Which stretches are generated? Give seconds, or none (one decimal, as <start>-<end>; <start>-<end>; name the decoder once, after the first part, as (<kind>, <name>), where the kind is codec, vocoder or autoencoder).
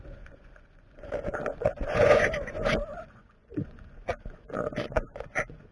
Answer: 0.0-5.7 (vocoder, Vocos)